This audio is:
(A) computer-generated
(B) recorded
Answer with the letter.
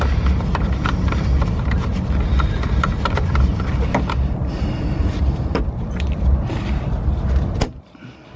B